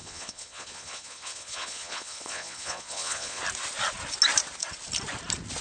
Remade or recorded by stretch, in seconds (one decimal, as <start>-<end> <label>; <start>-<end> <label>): 0.0-3.4 remade; 3.4-5.6 recorded